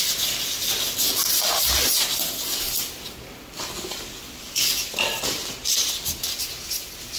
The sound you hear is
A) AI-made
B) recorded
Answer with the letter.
B